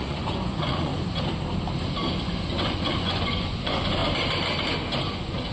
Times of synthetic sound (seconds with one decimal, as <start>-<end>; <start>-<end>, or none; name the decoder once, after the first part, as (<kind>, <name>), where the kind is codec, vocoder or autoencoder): 0.0-0.9 (vocoder, Vocos); 2.2-4.0; 5.0-5.5